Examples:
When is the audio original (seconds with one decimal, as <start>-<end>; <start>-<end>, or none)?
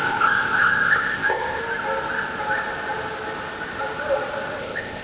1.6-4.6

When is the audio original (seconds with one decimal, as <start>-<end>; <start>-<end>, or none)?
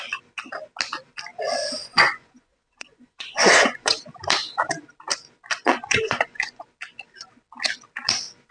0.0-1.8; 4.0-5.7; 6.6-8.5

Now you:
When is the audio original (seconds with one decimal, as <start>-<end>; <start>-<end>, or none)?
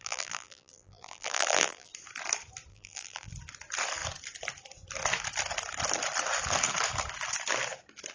1.9-2.7; 3.3-8.1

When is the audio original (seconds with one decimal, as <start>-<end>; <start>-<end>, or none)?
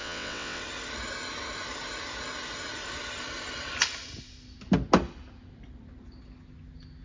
0.6-7.0